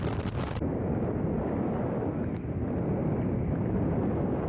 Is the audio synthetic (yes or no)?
no